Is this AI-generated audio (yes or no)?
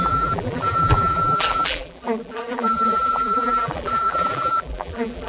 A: yes